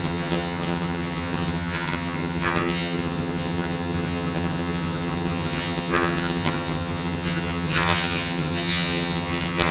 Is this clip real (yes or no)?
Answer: no